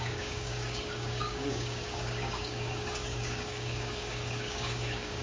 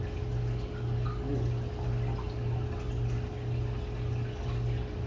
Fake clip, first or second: first